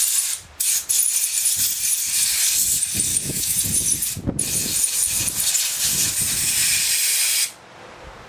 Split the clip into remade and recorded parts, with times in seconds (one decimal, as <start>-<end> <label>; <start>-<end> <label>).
0.0-3.1 recorded; 3.1-3.6 remade; 3.6-8.3 recorded